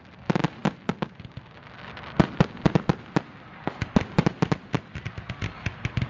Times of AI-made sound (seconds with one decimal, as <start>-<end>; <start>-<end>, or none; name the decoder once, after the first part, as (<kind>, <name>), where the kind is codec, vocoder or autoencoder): none

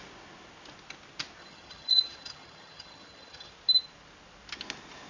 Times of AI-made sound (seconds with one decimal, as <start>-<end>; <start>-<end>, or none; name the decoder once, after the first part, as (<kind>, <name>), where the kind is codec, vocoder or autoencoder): 1.4-3.5 (vocoder, HiFi-GAN)

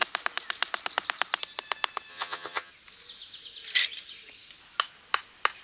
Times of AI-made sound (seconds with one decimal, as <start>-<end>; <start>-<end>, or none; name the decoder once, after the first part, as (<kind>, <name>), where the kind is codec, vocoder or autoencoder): 2.1-2.7 (vocoder, HiFi-GAN)

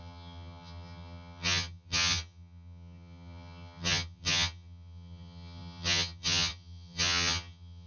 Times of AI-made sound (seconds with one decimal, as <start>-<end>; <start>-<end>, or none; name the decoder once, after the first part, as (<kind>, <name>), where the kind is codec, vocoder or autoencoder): 0.0-7.9 (vocoder, HiFi-GAN)